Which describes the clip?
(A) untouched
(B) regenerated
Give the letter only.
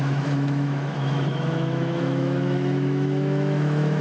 B